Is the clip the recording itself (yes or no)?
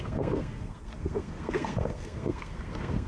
no